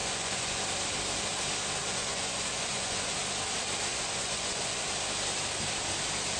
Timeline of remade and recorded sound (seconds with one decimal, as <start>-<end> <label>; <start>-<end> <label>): 0.0-0.6 remade; 0.6-1.8 recorded; 1.8-3.1 remade; 3.1-3.9 recorded; 3.9-4.8 remade; 4.8-6.4 recorded